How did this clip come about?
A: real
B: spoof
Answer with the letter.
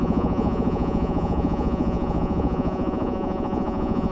B